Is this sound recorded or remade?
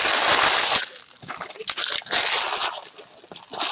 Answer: recorded